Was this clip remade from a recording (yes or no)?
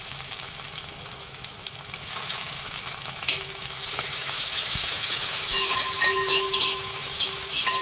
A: yes